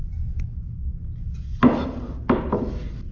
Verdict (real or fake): real